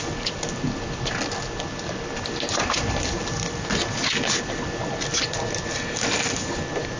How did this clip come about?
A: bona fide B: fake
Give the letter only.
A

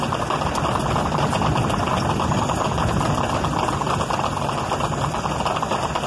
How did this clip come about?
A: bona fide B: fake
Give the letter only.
A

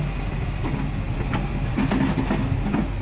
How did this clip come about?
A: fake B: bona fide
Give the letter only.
B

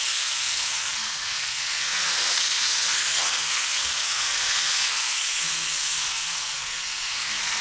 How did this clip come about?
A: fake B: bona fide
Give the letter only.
A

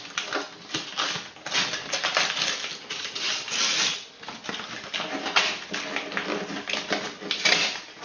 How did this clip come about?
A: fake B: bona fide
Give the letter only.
B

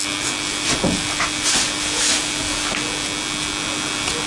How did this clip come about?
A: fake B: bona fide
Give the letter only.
B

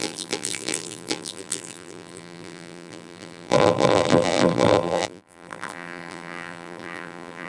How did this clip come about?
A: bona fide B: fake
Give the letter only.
B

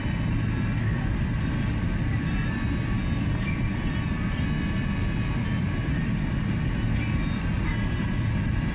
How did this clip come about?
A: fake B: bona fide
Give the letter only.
B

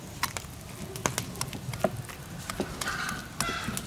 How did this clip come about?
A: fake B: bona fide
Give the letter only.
B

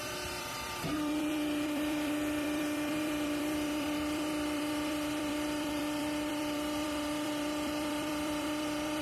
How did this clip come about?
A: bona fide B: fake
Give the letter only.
B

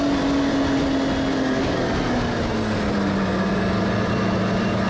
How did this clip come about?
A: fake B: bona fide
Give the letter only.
B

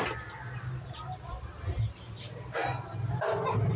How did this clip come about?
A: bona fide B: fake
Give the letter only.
A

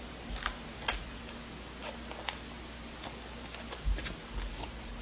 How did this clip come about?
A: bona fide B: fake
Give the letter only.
A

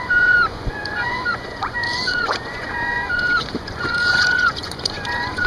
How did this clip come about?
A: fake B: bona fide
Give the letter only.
A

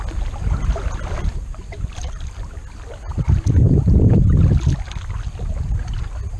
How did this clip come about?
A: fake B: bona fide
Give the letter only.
B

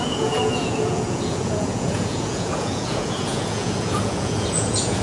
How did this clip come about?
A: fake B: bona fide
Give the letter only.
A